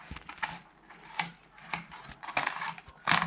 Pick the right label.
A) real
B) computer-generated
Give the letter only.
A